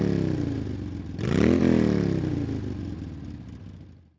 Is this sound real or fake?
real